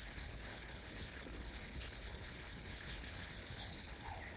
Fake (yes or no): yes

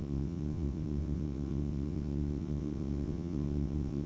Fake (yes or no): yes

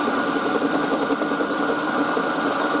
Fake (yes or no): no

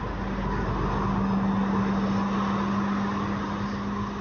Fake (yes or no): no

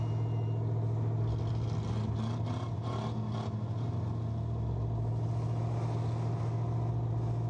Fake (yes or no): no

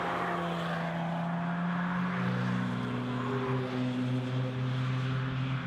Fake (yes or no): no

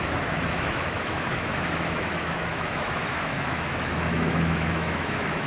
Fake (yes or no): yes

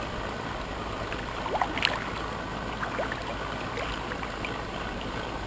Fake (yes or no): no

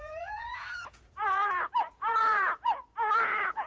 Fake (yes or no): yes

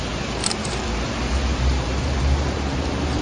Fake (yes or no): yes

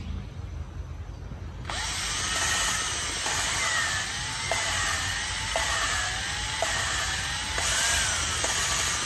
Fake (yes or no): no